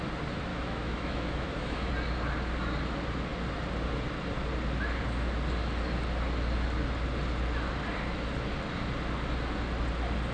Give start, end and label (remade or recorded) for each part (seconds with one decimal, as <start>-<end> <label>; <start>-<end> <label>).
0.0-0.5 recorded; 0.5-1.9 remade; 1.9-10.3 recorded